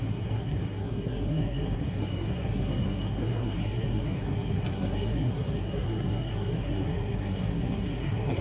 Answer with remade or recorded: remade